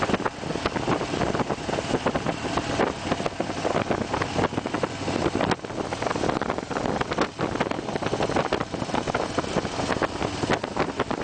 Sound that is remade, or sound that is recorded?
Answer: recorded